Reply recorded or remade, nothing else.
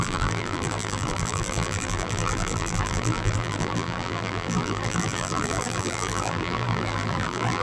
remade